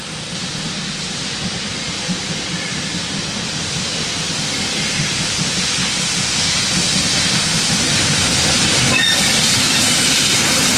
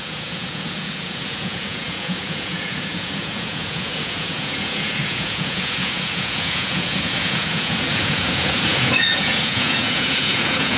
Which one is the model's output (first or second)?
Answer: second